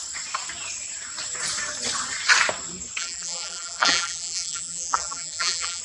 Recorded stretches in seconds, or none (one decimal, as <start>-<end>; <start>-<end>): 0.0-3.0